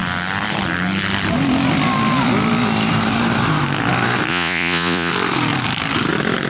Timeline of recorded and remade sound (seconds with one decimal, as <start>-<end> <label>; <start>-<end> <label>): 0.0-4.3 recorded; 4.3-5.1 remade; 5.1-6.5 recorded